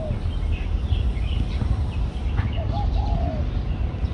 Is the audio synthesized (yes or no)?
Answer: no